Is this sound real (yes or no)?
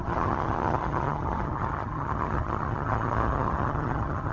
no